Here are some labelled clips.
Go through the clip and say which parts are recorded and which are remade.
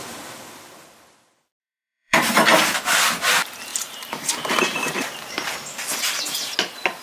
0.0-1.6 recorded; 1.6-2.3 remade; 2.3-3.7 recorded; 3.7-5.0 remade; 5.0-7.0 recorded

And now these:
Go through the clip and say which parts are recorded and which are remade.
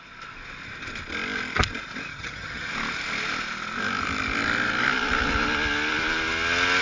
0.0-2.1 recorded; 2.1-2.7 remade; 2.7-6.8 recorded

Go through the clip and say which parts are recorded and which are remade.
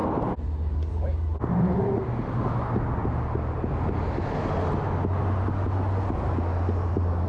0.0-7.3 recorded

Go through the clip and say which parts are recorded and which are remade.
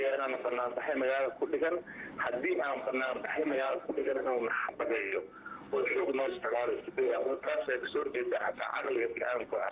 0.0-0.7 remade; 0.7-2.5 recorded; 2.5-9.7 remade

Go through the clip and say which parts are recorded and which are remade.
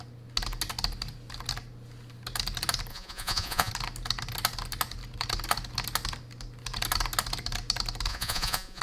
0.0-2.9 recorded; 2.9-3.7 remade; 3.7-8.1 recorded; 8.1-8.8 remade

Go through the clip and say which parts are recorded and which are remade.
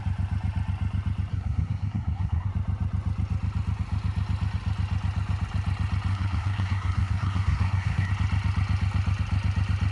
0.0-1.3 recorded; 1.3-2.5 remade; 2.5-6.1 recorded; 6.1-8.1 remade; 8.1-9.9 recorded